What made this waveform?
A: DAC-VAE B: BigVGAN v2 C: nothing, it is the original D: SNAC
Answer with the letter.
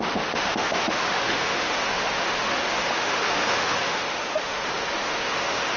A